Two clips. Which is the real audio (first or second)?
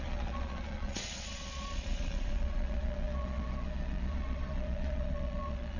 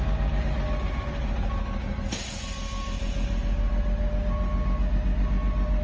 second